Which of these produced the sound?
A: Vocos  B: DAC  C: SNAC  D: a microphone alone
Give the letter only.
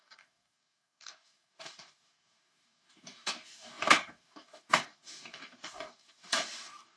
B